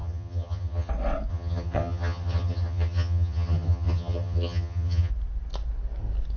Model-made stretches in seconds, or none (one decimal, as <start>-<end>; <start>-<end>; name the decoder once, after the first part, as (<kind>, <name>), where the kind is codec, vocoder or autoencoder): 0.0-0.9 (vocoder, HiFi-GAN); 1.3-5.1